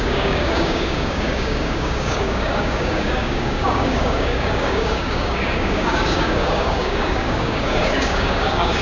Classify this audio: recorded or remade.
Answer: remade